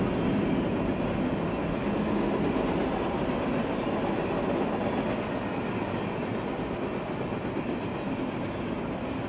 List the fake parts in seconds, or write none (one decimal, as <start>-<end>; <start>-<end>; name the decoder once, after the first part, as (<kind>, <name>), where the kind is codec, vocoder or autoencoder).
none